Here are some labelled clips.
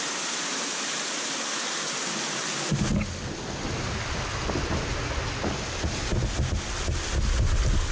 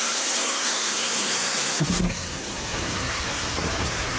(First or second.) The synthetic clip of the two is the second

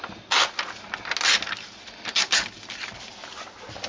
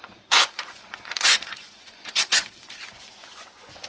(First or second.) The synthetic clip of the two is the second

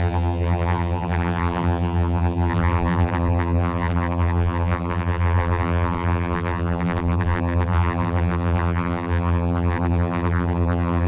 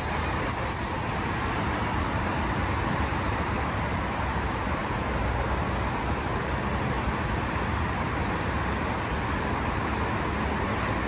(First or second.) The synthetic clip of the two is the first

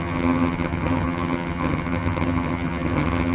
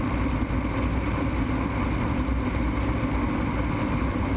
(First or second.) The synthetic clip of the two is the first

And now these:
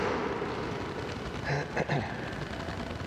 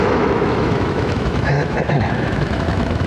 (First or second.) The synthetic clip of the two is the second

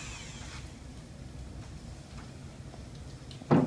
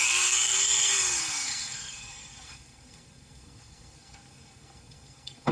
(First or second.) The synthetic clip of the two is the second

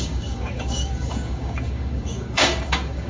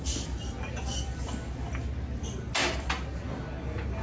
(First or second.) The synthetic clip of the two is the first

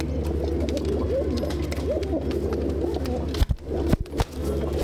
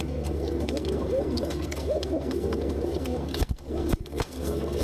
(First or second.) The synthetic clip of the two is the second